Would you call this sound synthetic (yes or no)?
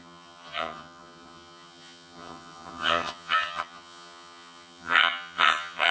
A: yes